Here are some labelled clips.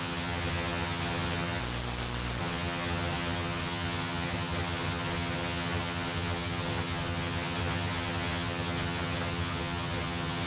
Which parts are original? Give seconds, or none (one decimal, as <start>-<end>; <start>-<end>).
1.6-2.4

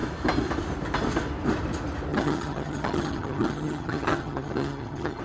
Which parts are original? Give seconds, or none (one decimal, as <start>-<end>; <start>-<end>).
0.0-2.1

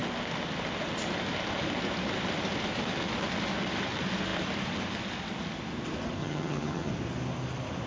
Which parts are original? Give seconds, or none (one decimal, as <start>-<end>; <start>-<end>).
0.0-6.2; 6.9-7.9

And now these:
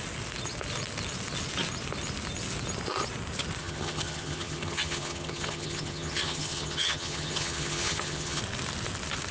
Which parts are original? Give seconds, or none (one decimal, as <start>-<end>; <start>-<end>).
0.0-3.6; 8.4-9.3

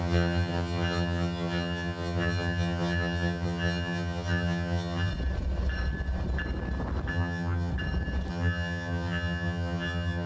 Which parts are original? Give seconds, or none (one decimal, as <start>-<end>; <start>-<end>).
5.1-7.1; 7.7-8.3

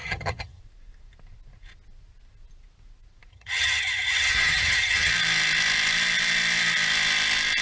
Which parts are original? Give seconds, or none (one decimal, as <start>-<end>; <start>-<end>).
0.6-3.3; 5.1-7.6

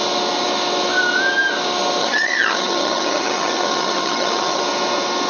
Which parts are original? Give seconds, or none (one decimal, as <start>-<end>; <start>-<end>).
0.0-2.0; 4.6-5.3